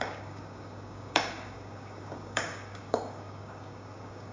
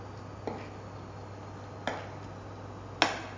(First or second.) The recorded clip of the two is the second